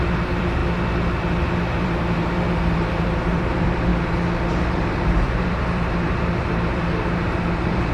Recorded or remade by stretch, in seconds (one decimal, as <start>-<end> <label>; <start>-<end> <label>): 0.0-0.6 remade; 0.6-1.6 recorded; 1.6-3.9 remade; 3.9-4.5 recorded; 4.5-7.9 remade